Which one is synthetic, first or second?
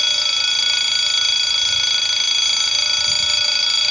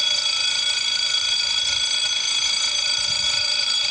second